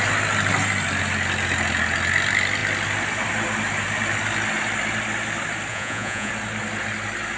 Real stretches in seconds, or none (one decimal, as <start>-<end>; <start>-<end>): 0.0-5.7; 6.3-7.4